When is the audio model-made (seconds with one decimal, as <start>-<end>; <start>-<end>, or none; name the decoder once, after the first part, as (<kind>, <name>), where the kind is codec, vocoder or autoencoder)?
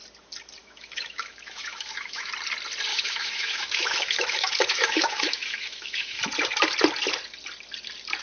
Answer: 0.6-2.3 (autoencoder, DAC-VAE); 2.9-6.2